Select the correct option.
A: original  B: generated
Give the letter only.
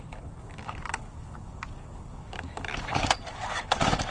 B